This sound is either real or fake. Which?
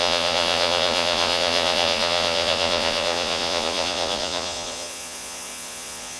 fake